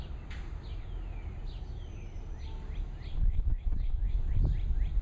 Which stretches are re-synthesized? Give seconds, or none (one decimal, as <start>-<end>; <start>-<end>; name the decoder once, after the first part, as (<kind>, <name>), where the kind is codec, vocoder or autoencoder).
3.2-4.4 (autoencoder, DAC-VAE)